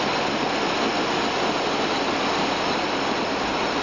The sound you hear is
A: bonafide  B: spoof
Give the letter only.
A